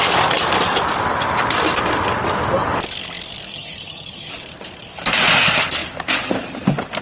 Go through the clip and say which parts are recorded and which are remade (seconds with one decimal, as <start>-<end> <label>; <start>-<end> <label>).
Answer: 0.0-3.5 recorded; 3.5-4.3 remade; 4.3-7.0 recorded